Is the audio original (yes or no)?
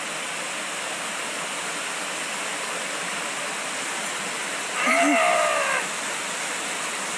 yes